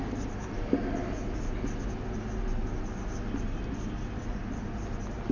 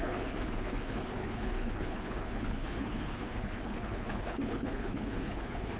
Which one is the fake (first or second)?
second